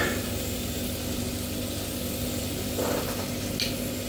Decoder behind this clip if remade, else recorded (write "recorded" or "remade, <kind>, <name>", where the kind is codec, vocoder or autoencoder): recorded